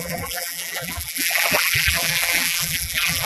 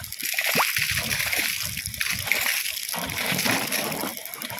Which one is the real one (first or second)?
second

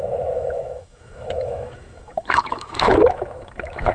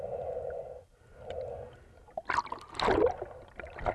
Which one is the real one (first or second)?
second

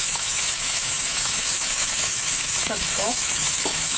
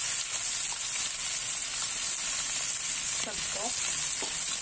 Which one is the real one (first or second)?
second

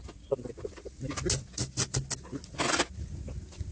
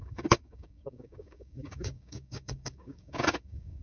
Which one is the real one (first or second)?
first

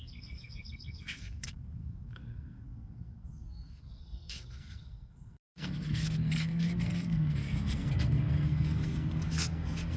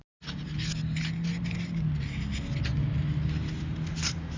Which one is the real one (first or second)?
second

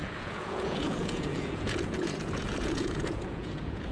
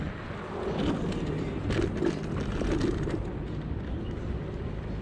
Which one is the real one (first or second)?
second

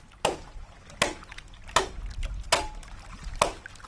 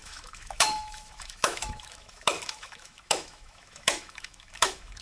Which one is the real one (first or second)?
first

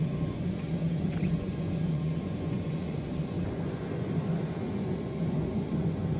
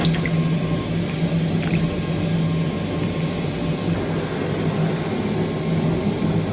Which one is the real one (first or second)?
second